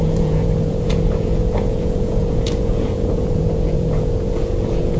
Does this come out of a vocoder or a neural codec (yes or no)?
yes